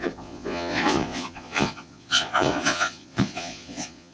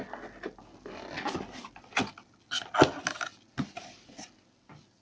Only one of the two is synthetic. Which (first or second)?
first